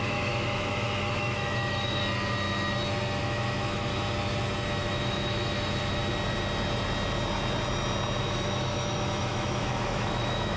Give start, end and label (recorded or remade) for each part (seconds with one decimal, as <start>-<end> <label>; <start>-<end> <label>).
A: 0.0-2.0 remade; 2.0-3.2 recorded; 3.2-3.9 remade; 3.9-4.7 recorded; 4.7-6.0 remade; 6.0-8.2 recorded; 8.2-10.6 remade